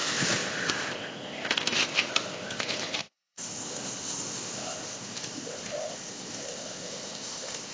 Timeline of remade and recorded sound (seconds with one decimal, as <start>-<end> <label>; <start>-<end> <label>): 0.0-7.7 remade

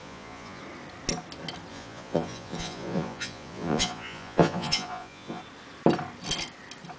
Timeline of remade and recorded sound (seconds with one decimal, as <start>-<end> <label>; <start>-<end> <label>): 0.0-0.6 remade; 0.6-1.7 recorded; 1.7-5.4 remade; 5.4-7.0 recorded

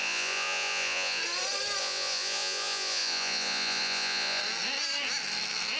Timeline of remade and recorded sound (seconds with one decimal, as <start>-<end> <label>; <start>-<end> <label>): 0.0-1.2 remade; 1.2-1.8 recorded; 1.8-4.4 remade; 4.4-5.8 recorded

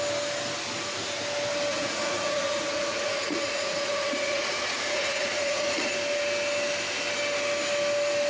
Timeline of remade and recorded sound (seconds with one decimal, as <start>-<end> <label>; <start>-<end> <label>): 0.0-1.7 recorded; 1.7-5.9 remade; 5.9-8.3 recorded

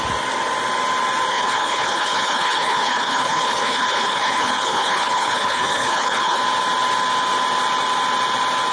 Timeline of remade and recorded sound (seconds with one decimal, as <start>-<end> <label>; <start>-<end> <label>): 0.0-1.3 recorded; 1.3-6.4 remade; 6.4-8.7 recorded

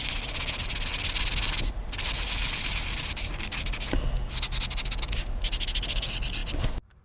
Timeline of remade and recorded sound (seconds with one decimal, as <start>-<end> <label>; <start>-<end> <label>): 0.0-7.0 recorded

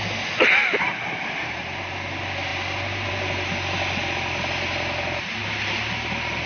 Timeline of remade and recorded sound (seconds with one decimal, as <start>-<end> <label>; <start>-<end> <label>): 0.0-0.6 recorded; 0.6-1.8 remade; 1.8-5.4 recorded; 5.4-6.5 remade